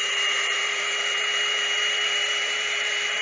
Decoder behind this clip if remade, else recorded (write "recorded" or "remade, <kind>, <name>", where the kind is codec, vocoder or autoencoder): remade, vocoder, BigVGAN v2